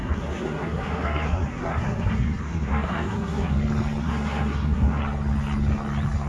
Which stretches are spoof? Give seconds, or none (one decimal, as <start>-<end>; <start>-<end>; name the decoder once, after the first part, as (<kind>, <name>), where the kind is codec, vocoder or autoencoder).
0.0-3.6 (codec, SNAC); 4.0-5.0